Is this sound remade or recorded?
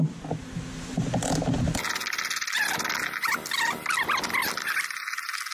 recorded